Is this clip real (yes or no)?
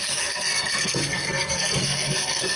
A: no